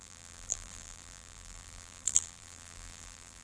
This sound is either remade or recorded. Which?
remade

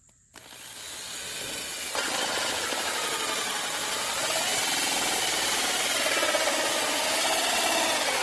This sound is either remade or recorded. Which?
recorded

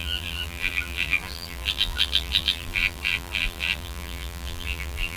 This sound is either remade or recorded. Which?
remade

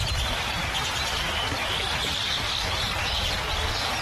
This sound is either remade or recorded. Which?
recorded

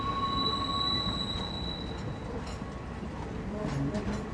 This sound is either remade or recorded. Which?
recorded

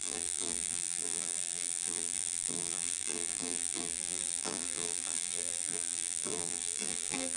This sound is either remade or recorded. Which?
remade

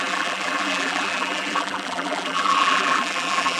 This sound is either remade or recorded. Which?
remade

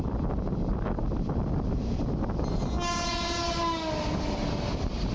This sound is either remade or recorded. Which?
recorded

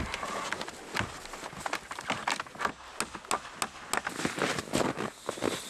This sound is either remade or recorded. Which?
recorded